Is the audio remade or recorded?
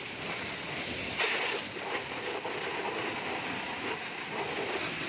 recorded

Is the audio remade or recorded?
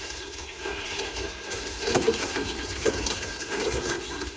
remade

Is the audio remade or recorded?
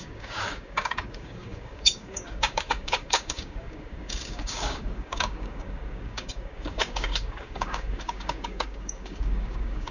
remade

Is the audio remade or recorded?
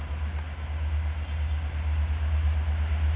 recorded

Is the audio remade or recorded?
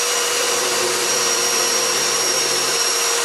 remade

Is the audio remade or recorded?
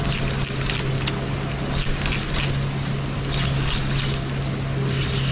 recorded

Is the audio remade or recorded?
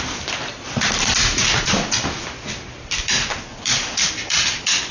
remade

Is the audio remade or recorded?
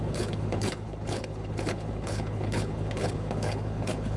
remade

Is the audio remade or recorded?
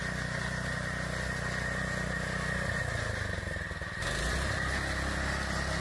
recorded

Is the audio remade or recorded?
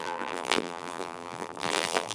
remade